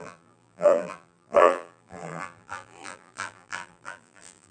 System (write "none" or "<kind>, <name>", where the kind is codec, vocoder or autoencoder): vocoder, BigVGAN v2